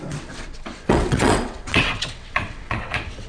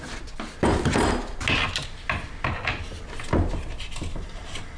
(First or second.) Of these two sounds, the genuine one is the second